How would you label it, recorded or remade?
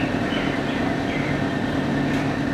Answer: recorded